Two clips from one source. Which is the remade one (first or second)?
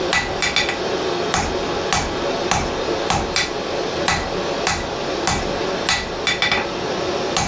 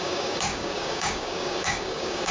second